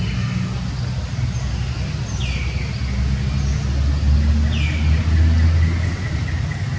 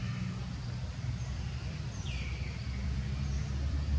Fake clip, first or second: second